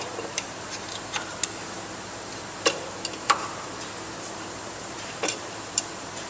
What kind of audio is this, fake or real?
fake